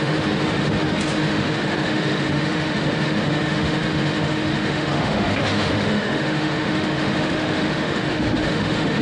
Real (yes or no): no